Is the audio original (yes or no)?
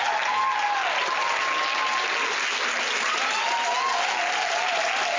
yes